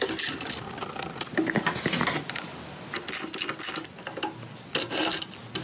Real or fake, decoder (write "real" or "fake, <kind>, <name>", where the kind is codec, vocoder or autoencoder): real